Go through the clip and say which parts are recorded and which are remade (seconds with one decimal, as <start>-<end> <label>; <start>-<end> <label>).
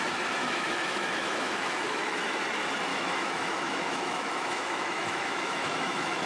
0.0-0.4 recorded; 0.4-2.4 remade; 2.4-2.9 recorded; 2.9-6.3 remade